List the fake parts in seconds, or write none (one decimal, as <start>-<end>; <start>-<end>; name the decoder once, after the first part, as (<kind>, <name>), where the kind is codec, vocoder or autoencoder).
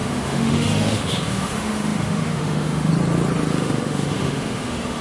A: 0.0-2.9 (autoencoder, DAC-VAE); 3.5-5.0